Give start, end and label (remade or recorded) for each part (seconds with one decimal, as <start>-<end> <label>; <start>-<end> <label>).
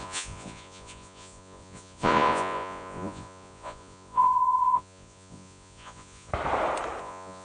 0.0-6.3 remade; 6.3-7.0 recorded; 7.0-7.4 remade